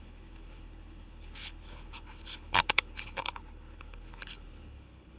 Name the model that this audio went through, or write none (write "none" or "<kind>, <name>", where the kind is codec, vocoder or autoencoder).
codec, HILCodec